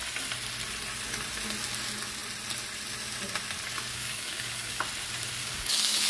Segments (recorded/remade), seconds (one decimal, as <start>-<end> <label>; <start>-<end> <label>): 0.0-3.9 recorded; 3.9-4.8 remade; 4.8-5.4 recorded; 5.4-6.1 remade